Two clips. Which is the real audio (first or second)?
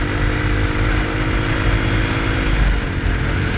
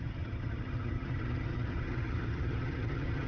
first